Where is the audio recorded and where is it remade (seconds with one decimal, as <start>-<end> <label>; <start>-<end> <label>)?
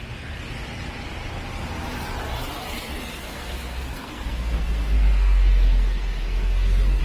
0.0-3.1 recorded; 3.1-7.0 remade